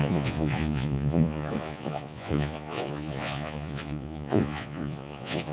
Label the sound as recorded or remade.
remade